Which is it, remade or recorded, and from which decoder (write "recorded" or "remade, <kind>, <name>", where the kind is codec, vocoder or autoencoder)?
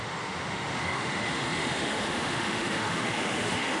remade, autoencoder, DAC-VAE